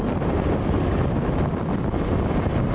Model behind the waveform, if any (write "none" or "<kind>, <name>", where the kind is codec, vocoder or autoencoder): none